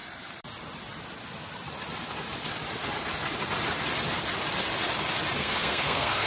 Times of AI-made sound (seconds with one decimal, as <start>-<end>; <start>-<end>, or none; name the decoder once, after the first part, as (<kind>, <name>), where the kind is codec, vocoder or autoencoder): 5.4-6.3 (codec, SNAC)

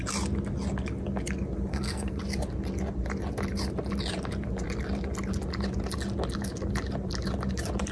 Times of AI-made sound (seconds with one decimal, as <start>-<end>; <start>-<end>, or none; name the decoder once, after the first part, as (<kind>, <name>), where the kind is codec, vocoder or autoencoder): 1.7-2.2 (codec, SNAC)

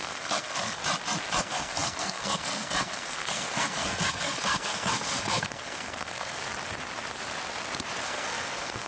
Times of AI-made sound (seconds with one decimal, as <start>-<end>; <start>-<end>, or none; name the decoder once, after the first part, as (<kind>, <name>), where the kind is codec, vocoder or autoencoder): 0.0-0.8 (codec, SNAC); 1.4-6.4; 8.0-8.9

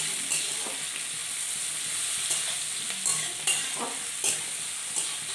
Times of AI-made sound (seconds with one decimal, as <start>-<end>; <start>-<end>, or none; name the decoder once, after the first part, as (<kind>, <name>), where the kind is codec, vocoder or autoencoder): none

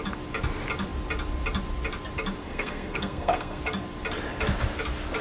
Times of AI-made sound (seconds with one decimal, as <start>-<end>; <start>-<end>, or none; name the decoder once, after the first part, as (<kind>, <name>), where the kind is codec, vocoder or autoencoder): 2.4-3.6 (codec, SNAC)

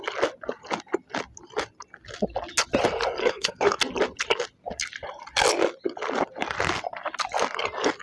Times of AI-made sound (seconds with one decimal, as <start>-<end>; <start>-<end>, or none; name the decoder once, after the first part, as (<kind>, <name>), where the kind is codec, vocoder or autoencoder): 3.2-3.8 (codec, SNAC)